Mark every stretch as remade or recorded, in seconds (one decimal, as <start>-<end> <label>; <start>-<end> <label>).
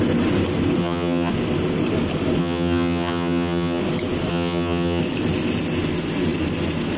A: 0.0-0.8 recorded; 0.8-1.3 remade; 1.3-2.4 recorded; 2.4-3.8 remade; 3.8-4.3 recorded; 4.3-5.0 remade; 5.0-7.0 recorded